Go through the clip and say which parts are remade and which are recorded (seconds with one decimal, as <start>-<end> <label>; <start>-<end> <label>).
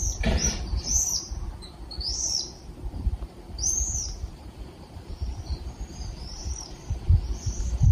0.0-0.4 remade; 0.4-1.0 recorded; 1.0-7.9 remade